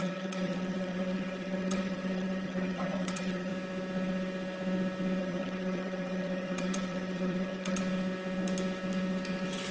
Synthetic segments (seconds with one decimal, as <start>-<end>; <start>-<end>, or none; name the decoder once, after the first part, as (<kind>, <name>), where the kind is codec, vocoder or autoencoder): 0.0-3.5 (vocoder, HiFi-GAN); 5.2-7.8